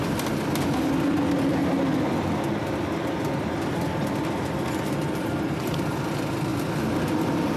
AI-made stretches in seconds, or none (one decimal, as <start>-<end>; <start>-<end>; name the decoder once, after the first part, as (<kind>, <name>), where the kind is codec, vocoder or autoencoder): none